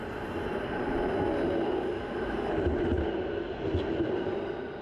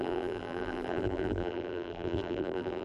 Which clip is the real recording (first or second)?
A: first